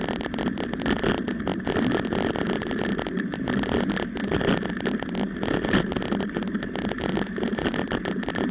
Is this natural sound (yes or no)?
yes